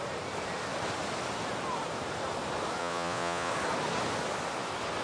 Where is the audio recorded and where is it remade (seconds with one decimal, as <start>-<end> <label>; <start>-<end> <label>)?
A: 0.0-2.8 recorded; 2.8-3.5 remade; 3.5-5.0 recorded